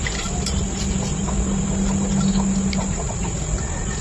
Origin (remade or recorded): recorded